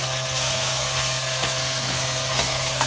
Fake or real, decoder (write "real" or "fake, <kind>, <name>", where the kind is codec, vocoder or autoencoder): fake, codec, SNAC